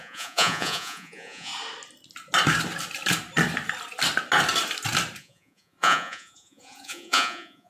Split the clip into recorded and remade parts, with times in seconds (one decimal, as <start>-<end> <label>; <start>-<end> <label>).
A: 0.0-1.5 remade; 1.5-5.2 recorded; 5.2-7.7 remade